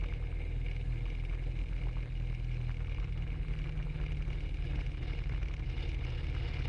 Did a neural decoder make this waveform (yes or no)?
no